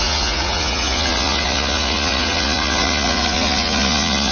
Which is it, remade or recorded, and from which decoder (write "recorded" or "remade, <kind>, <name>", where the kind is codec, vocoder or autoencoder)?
remade, vocoder, Vocos